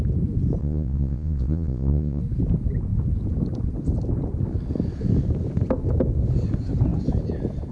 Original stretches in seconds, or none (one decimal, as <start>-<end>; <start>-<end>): 0.0-0.6; 2.2-7.7